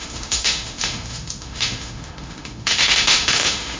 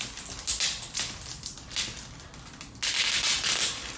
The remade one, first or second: first